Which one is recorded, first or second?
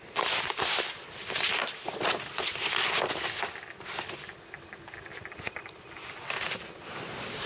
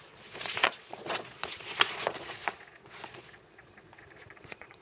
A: first